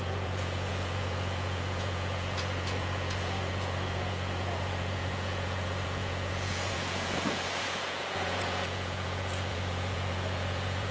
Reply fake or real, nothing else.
fake